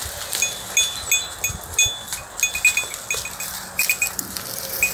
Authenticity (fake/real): real